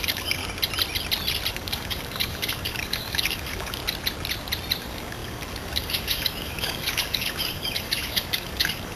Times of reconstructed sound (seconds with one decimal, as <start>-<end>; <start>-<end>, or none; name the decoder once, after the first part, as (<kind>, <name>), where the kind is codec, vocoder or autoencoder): 0.0-0.4 (codec, DAC); 1.5-3.8; 4.8-9.0